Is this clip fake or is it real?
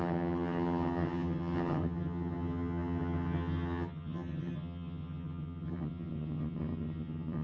fake